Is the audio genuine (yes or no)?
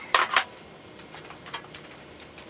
no